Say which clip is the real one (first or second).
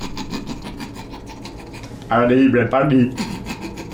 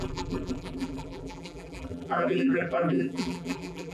first